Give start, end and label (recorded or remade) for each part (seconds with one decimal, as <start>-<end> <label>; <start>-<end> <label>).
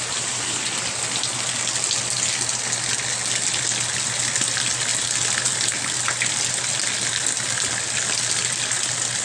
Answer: 0.0-9.2 recorded